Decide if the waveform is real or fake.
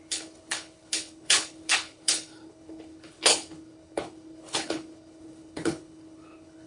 fake